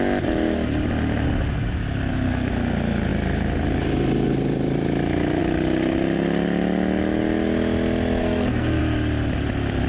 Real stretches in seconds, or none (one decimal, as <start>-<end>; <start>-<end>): 0.0-8.2; 8.8-9.9